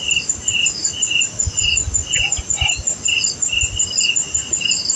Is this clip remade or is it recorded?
recorded